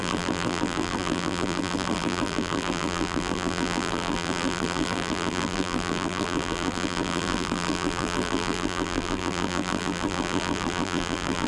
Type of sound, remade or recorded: remade